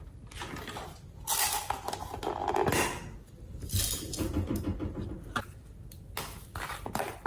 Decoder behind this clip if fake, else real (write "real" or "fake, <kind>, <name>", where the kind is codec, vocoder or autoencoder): real